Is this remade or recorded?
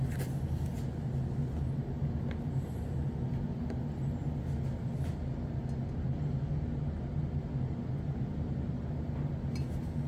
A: recorded